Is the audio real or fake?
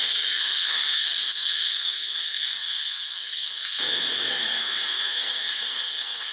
fake